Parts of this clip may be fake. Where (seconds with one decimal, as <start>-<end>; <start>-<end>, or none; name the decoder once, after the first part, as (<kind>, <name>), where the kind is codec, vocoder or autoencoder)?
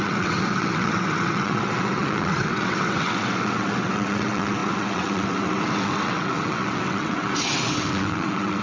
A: 0.0-8.6 (vocoder, WaveNeXt)